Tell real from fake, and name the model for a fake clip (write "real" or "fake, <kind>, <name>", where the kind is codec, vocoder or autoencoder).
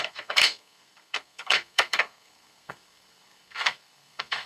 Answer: fake, codec, SNAC